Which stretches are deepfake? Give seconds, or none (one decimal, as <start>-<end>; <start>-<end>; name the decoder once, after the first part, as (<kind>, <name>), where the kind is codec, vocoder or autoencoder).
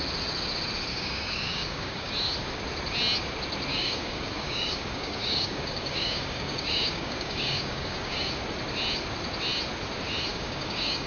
0.9-2.1 (codec, DAC); 3.7-8.3; 10.3-11.1